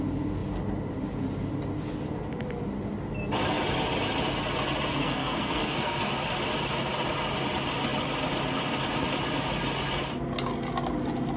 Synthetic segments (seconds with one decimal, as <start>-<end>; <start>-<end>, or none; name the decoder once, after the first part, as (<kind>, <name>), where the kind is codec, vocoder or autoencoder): 5.0-6.1 (codec, SNAC)